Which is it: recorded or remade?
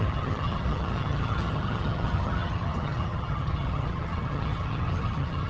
remade